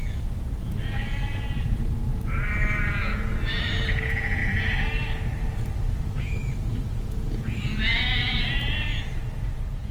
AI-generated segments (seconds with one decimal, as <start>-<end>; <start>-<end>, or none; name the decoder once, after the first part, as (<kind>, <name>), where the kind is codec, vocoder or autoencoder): 0.0-4.4 (vocoder, Vocos); 5.9-9.9